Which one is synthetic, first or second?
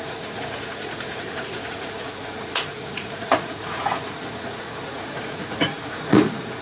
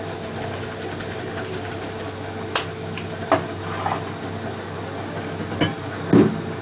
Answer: first